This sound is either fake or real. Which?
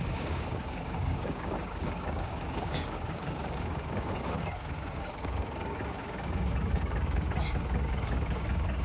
fake